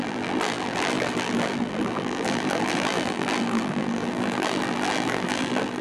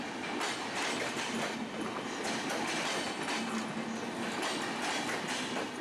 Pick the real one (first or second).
second